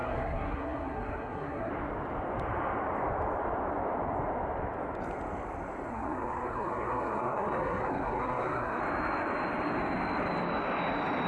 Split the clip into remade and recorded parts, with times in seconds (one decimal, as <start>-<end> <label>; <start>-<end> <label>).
0.0-1.7 remade; 1.7-5.9 recorded; 5.9-8.8 remade; 8.8-11.3 recorded